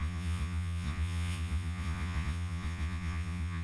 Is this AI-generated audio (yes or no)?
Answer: yes